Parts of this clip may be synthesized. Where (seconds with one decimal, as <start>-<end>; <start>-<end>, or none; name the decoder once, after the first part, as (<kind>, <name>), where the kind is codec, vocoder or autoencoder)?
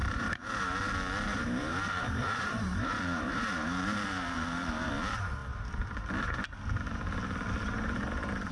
0.0-0.9 (vocoder, BigVGAN v2); 1.3-4.9